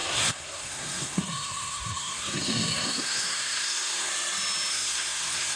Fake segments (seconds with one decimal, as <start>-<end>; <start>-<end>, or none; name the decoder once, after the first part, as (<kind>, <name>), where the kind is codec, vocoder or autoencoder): 0.0-4.1 (codec, SNAC); 4.7-5.6